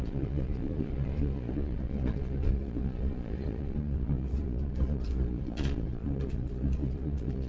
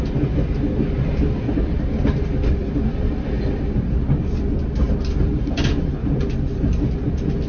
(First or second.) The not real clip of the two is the first